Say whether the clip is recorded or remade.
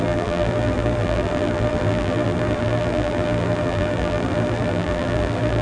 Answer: remade